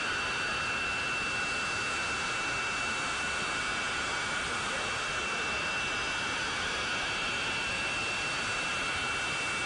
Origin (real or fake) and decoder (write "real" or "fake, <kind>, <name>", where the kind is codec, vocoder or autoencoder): real